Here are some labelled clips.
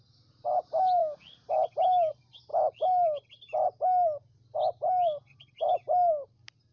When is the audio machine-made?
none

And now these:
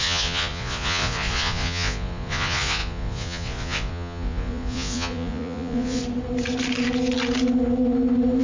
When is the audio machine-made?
0.0-6.0 (vocoder, Vocos)

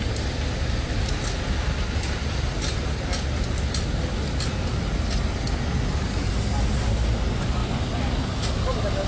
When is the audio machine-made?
none